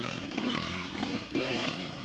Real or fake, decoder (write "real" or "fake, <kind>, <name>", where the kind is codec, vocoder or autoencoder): fake, codec, SNAC